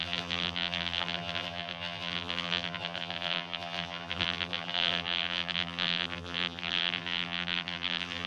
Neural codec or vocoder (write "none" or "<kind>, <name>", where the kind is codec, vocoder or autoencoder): vocoder, BigVGAN v2